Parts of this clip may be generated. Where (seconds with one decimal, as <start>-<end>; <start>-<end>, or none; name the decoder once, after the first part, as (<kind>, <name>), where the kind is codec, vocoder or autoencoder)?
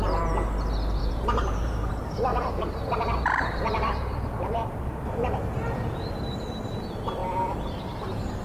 1.0-1.9 (vocoder, BigVGAN v2); 2.3-6.5; 7.2-8.4